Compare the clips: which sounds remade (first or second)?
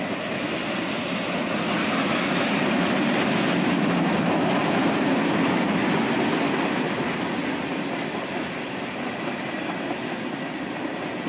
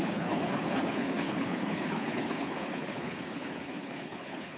second